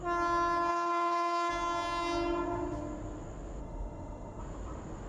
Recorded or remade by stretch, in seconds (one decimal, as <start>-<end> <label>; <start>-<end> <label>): 0.0-0.7 recorded; 0.7-1.5 remade; 1.5-3.6 recorded; 3.6-4.4 remade; 4.4-5.1 recorded